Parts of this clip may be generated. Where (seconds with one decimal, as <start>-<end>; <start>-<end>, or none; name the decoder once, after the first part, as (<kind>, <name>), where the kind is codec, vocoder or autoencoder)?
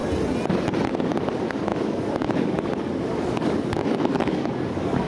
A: 0.9-5.1 (codec, DAC)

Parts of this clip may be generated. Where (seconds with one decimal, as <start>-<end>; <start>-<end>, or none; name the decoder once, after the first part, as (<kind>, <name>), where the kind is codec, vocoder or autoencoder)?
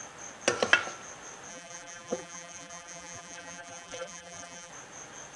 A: 1.5-4.7 (vocoder, BigVGAN v2)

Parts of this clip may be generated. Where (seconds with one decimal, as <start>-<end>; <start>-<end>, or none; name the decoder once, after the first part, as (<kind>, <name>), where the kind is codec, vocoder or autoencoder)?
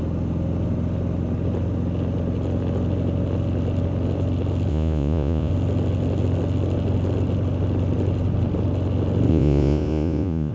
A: 4.7-5.5 (vocoder, Vocos); 9.3-10.5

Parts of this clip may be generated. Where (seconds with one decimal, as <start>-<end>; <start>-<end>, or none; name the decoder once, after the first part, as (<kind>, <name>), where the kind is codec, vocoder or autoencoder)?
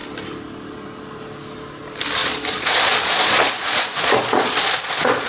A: 2.2-5.3 (vocoder, Vocos)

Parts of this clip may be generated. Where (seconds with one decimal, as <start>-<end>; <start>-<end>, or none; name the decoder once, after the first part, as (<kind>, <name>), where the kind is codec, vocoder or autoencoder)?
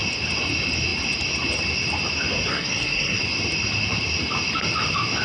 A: 2.5-3.2 (codec, SNAC)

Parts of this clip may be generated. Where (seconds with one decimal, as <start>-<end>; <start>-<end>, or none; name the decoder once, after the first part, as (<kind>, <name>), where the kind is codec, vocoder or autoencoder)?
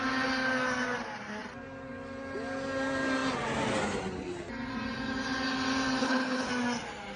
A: 6.0-6.5 (codec, HILCodec)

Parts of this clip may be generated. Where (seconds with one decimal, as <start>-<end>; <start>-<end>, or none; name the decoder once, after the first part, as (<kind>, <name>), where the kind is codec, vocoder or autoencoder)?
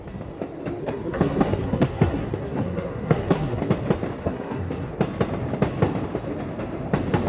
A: 0.8-3.6 (codec, SNAC); 4.2-4.9